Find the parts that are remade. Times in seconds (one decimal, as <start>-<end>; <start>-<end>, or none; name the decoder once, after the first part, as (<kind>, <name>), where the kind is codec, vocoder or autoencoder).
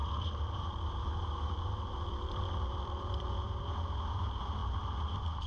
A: 0.0-3.2 (vocoder, BigVGAN v2); 4.6-5.1